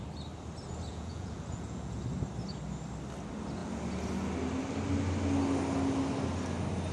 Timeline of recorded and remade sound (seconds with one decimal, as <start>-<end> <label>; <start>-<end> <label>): 0.0-0.9 recorded; 0.9-2.0 remade; 2.0-6.9 recorded